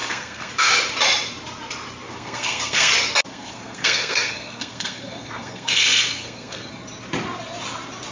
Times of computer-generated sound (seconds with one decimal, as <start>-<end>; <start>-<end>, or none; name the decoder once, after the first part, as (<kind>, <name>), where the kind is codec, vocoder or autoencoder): 0.0-0.5 (codec, SNAC); 2.1-2.9; 3.3-6.7